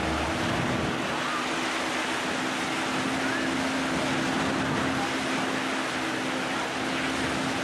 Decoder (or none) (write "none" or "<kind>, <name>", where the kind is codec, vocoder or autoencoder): none